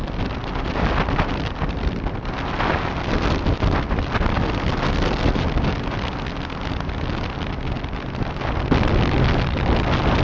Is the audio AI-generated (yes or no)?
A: no